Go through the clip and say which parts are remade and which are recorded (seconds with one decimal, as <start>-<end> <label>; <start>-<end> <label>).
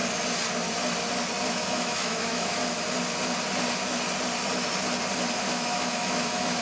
0.0-1.5 recorded; 1.5-2.6 remade; 2.6-5.5 recorded; 5.5-6.6 remade